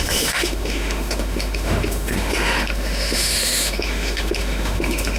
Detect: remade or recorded remade